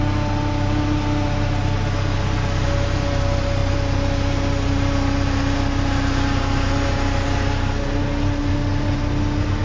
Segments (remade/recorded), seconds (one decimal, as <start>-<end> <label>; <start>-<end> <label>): 0.0-9.6 recorded